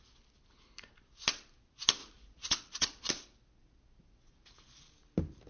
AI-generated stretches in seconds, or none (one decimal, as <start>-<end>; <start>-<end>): 2.0-3.1